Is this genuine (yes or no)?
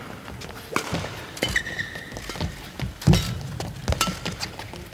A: yes